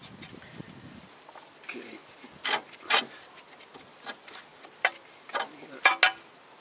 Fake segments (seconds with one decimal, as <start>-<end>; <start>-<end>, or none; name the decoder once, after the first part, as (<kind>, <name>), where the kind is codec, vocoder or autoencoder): 4.5-5.1 (vocoder, BigVGAN v2)